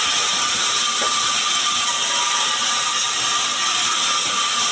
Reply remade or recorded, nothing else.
recorded